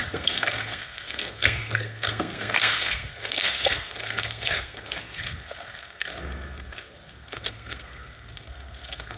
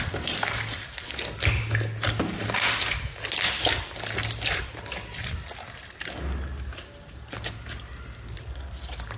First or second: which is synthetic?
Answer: first